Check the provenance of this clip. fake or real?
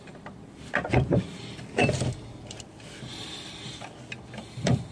fake